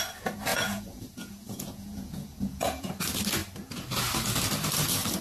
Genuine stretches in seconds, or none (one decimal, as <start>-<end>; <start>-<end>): 0.0-0.5; 2.9-5.2